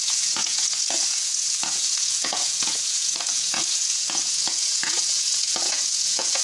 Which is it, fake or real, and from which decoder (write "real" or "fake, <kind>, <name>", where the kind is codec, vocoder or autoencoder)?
fake, vocoder, Vocos